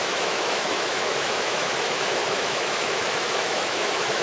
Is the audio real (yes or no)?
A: no